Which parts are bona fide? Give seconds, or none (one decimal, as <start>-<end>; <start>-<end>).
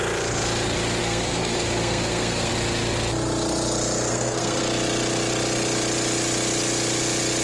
0.0-1.0; 2.5-4.1; 4.6-7.4